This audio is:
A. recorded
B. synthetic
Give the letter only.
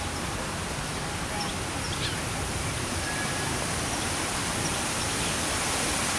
A